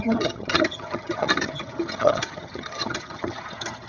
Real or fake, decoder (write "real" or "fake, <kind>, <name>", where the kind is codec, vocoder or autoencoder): fake, vocoder, HiFi-GAN